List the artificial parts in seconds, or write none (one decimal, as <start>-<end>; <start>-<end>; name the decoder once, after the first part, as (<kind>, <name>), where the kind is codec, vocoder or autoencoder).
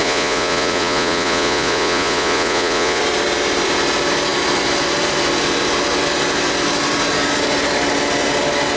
0.0-3.0 (vocoder, Vocos)